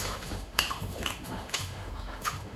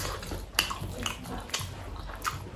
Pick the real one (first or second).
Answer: second